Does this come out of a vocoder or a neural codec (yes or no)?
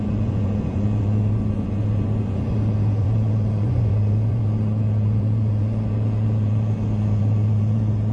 yes